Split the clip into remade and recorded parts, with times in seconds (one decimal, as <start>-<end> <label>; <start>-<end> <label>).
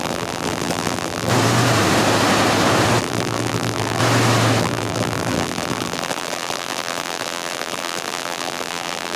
0.0-1.3 remade; 1.3-3.0 recorded; 3.0-4.0 remade; 4.0-4.6 recorded; 4.6-9.2 remade